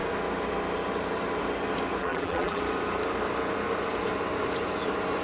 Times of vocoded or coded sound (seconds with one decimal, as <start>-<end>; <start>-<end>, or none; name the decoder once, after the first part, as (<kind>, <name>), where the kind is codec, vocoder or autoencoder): 2.0-2.6 (vocoder, BigVGAN v2)

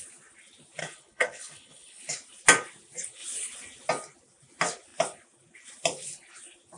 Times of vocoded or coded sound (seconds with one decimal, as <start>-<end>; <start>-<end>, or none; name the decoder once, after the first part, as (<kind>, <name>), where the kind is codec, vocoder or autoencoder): 0.8-2.0 (codec, HILCodec)

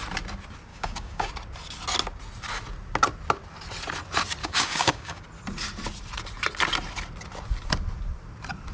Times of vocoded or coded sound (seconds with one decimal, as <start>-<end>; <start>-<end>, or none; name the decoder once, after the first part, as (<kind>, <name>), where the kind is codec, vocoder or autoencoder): 0.7-1.3 (codec, DAC); 4.4-5.2

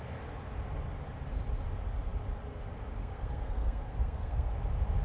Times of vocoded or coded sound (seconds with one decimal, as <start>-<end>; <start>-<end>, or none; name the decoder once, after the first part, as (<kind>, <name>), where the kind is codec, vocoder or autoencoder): 3.0-4.5 (codec, SNAC)